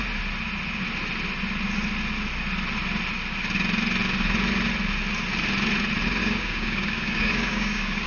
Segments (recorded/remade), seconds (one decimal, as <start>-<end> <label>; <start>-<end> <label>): 0.0-6.2 recorded; 6.2-8.1 remade